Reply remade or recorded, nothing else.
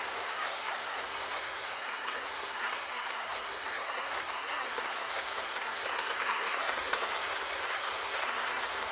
remade